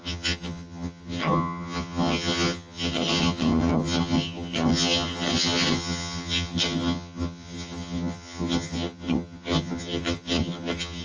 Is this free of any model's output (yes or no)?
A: no